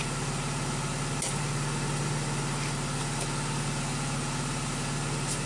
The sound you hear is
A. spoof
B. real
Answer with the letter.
B